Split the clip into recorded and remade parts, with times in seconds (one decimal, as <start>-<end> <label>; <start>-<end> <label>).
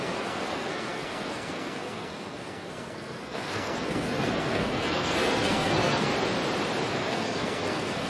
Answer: 0.0-6.1 remade; 6.1-6.9 recorded; 6.9-8.1 remade